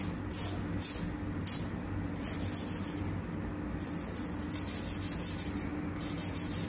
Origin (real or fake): real